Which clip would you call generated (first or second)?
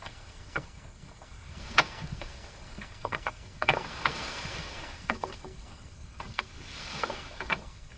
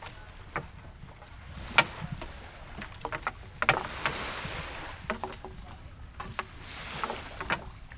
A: first